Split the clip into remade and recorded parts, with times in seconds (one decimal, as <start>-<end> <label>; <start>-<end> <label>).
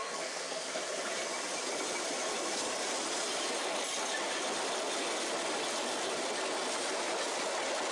0.0-0.8 remade; 0.8-7.9 recorded